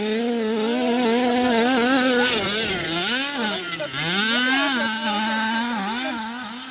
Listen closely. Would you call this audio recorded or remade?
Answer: recorded